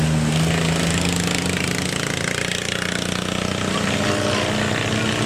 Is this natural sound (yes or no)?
yes